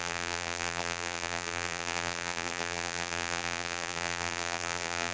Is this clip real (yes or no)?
no